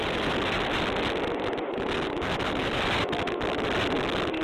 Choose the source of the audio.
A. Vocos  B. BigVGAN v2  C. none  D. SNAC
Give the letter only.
C